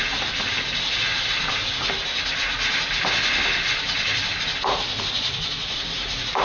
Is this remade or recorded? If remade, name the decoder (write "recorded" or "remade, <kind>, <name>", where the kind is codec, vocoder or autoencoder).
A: recorded